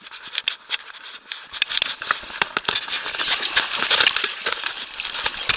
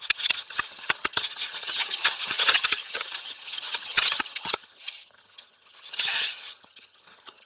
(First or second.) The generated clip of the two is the second